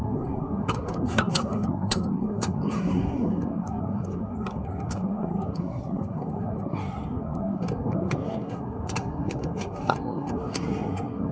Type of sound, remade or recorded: remade